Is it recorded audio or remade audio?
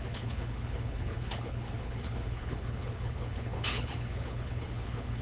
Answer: remade